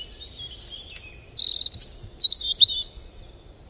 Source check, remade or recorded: recorded